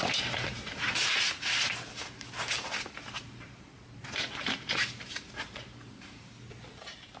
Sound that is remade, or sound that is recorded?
remade